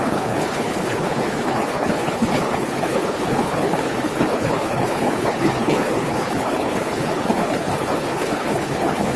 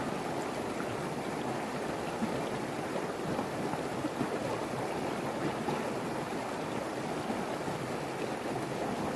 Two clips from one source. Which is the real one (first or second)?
second